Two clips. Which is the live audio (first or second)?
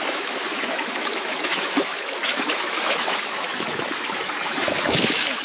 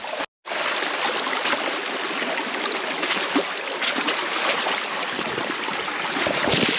second